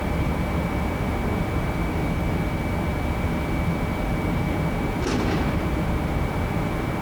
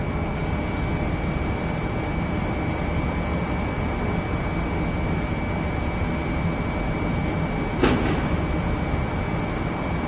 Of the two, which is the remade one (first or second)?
first